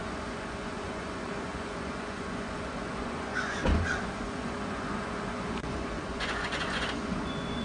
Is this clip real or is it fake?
fake